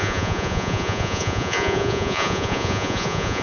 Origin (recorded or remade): remade